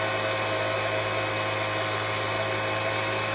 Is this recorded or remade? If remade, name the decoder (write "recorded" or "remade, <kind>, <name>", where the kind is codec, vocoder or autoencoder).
recorded